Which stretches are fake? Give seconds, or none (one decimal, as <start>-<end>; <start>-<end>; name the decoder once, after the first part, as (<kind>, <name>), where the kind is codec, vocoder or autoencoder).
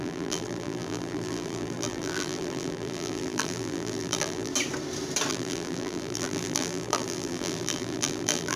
0.0-4.5 (vocoder, BigVGAN v2); 5.3-8.6